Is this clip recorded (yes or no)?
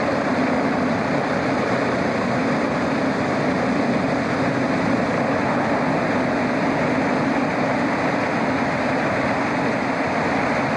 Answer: yes